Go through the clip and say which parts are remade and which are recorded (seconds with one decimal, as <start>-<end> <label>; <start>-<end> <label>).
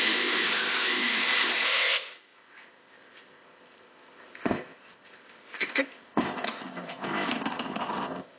0.0-8.4 remade